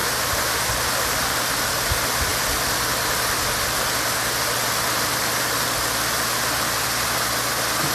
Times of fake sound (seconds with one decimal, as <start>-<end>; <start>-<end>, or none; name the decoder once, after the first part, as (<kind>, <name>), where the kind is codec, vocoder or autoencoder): 0.0-0.7 (vocoder, BigVGAN v2)